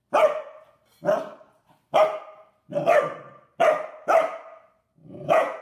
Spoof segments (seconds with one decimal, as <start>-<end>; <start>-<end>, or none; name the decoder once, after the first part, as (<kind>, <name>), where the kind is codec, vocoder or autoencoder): 5.0-5.6 (vocoder, Vocos)